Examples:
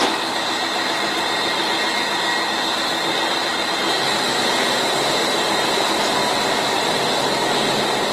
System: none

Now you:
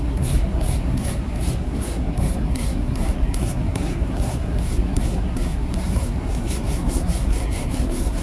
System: codec, SNAC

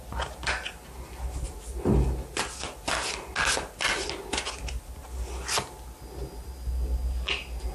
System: none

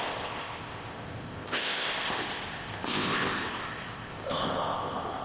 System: codec, ZipCodec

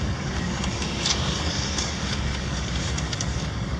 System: codec, DAC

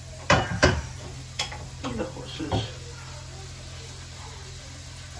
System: none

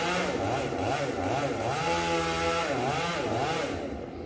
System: none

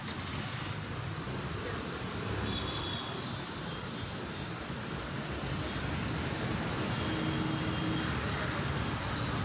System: none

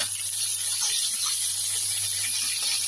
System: none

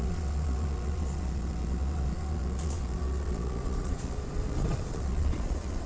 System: vocoder, Vocos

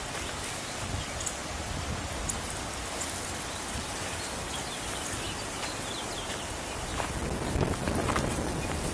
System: none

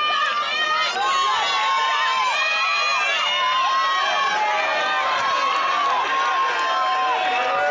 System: none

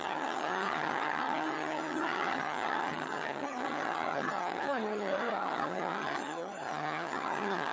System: vocoder, HiFi-GAN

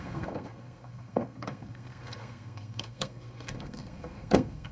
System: codec, SNAC